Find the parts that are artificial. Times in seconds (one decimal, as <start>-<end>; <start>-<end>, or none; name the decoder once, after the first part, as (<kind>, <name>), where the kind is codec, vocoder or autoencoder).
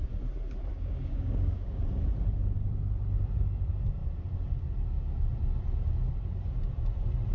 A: 0.7-1.8 (codec, DAC)